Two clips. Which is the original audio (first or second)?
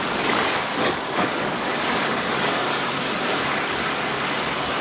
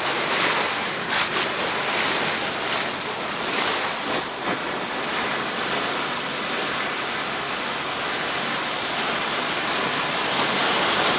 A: second